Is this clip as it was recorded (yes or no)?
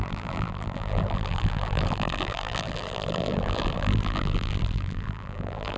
no